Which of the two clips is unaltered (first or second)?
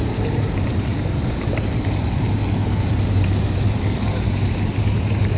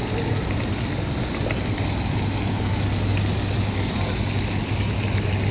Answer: second